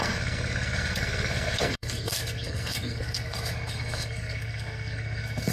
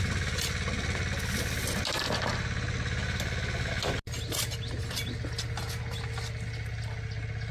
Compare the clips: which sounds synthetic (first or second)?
first